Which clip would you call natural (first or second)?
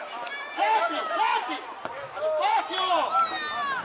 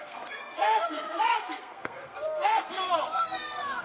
first